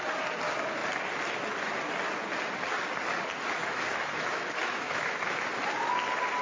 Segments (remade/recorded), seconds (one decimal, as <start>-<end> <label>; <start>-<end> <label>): 0.0-3.6 recorded; 3.6-5.2 remade; 5.2-6.4 recorded